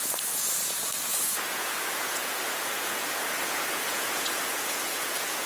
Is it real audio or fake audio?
fake